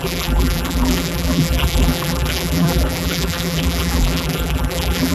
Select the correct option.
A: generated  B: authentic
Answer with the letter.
A